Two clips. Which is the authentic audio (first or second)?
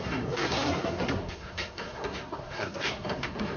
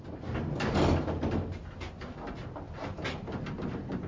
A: second